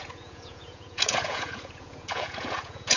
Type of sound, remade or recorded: remade